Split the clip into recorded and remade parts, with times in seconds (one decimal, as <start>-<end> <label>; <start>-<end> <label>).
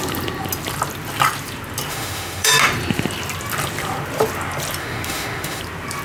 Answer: 0.0-1.9 recorded; 1.9-2.5 remade; 2.5-4.8 recorded; 4.8-5.6 remade; 5.6-6.0 recorded